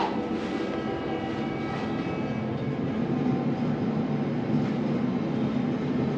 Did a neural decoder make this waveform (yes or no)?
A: no